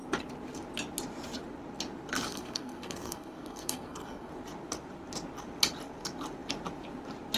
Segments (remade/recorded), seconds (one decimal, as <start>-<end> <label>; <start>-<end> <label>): 0.0-2.3 recorded; 2.3-4.3 remade; 4.3-7.4 recorded